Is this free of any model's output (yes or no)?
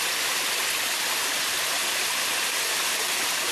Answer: yes